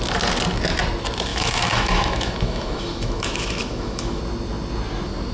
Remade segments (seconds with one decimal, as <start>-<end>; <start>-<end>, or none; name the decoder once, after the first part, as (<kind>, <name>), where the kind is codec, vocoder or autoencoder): 1.3-4.2 (autoencoder, DAC-VAE)